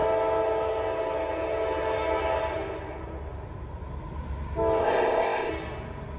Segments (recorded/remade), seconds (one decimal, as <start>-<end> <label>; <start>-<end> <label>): 0.0-4.8 recorded; 4.8-5.5 remade; 5.5-6.2 recorded